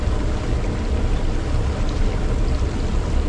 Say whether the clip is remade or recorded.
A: recorded